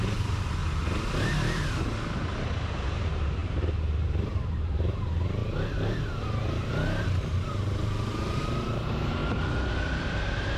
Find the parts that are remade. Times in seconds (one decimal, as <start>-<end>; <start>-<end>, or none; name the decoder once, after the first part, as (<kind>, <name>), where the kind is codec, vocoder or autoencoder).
0.0-0.6 (vocoder, BigVGAN v2); 2.7-5.4; 6.2-9.2; 9.7-10.6